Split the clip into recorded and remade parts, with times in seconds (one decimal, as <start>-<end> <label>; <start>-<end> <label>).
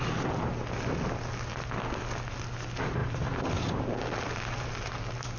0.0-5.4 recorded